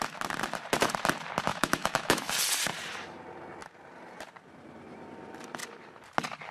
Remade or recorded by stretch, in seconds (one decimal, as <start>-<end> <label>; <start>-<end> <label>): 0.0-1.5 recorded; 1.5-2.3 remade; 2.3-6.5 recorded